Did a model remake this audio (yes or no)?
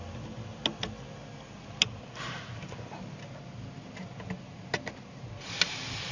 no